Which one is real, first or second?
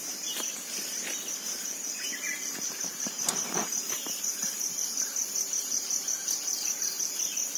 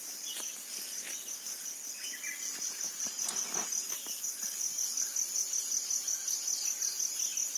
second